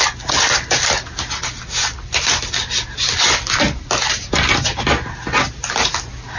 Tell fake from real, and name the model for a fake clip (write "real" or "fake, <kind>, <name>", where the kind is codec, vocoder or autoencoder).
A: real